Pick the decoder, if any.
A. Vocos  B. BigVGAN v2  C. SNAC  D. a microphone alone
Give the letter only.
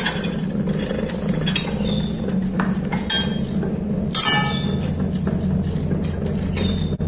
D